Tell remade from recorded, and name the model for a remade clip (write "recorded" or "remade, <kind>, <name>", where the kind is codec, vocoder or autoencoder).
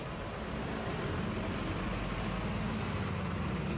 recorded